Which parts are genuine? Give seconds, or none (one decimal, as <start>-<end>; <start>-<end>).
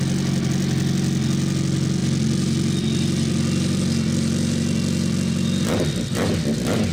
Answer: 0.0-6.9